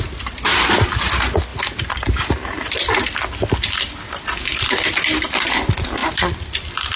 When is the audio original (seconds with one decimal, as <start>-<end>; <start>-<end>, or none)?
0.0-7.0